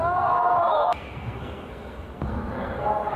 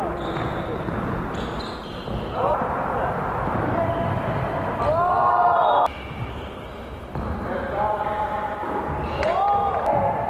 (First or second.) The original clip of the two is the second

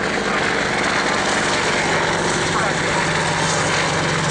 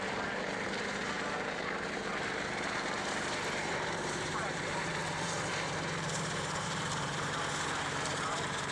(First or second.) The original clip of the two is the first